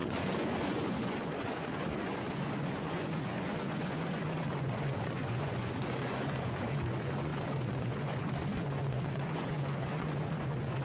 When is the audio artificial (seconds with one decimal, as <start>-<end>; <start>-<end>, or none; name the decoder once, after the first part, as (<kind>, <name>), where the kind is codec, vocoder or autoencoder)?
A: 0.0-10.8 (vocoder, Vocos)